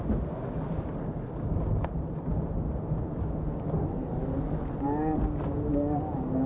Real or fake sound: real